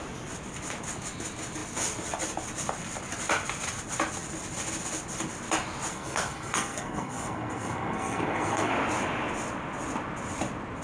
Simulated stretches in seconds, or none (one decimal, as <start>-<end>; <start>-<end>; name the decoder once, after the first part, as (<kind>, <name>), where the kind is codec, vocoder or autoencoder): 5.9-8.7 (codec, SNAC)